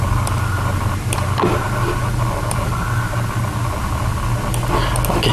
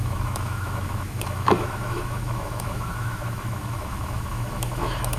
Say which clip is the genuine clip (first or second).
first